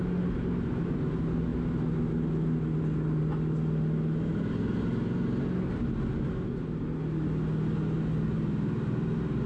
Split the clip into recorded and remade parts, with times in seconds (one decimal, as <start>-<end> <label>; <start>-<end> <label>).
0.0-9.5 recorded